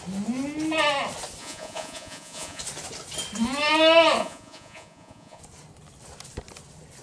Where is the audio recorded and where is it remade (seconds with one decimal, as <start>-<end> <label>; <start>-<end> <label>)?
0.0-1.4 recorded; 1.4-2.6 remade; 2.6-4.2 recorded; 4.2-5.4 remade; 5.4-7.0 recorded